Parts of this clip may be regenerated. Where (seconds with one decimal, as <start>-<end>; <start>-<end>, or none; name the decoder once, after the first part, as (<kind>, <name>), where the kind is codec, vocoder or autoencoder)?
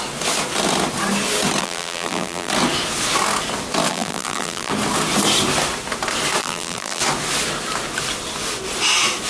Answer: 1.6-2.5 (vocoder, BigVGAN v2); 3.9-4.7; 6.4-7.0